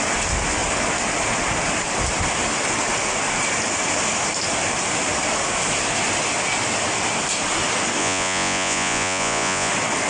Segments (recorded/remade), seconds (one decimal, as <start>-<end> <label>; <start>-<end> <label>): 0.0-8.0 recorded; 8.0-9.7 remade; 9.7-10.1 recorded